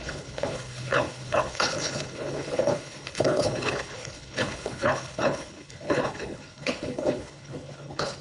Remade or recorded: remade